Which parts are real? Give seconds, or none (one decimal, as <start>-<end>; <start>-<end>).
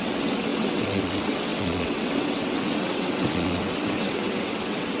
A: none